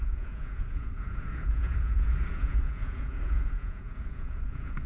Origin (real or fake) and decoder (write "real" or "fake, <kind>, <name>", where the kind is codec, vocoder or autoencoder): fake, vocoder, Vocos